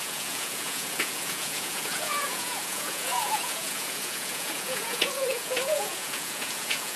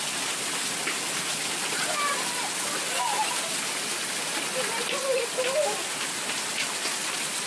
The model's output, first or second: first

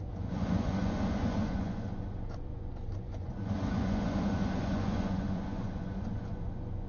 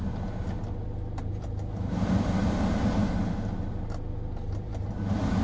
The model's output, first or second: first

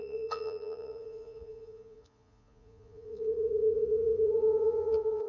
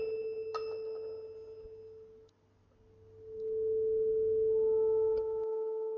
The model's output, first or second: first